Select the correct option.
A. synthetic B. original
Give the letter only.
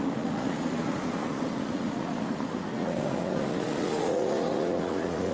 A